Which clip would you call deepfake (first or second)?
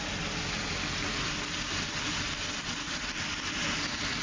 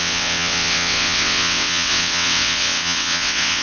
second